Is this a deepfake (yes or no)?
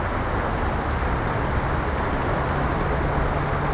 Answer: no